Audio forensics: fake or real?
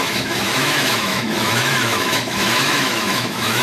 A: fake